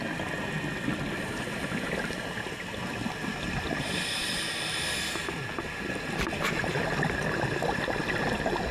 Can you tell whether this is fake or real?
real